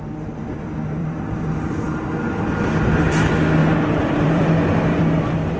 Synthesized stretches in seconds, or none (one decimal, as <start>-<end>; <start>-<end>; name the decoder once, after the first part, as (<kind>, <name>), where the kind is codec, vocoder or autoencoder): 1.0-2.1 (vocoder, BigVGAN v2); 3.6-4.5

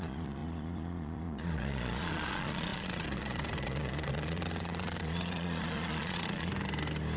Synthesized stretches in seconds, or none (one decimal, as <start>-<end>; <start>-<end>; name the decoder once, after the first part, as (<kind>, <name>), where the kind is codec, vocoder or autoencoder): 0.0-6.5 (vocoder, Vocos)

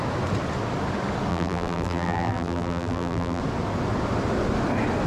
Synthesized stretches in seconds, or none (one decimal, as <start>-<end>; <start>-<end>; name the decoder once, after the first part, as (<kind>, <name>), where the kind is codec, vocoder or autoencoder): 1.3-3.4 (vocoder, BigVGAN v2)